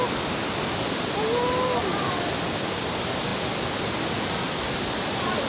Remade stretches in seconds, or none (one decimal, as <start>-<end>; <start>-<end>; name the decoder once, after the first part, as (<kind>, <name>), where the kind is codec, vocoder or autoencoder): none